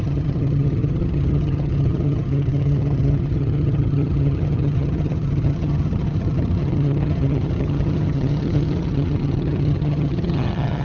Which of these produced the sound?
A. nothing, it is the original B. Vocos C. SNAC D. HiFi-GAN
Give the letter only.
D